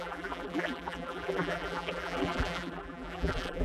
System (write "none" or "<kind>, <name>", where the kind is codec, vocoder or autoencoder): vocoder, BigVGAN v2